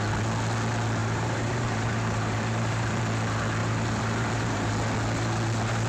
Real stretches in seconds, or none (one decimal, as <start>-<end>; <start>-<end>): 0.0-1.0; 3.0-3.6; 4.7-5.9